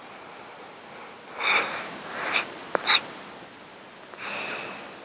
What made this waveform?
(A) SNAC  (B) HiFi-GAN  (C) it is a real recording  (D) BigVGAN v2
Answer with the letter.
C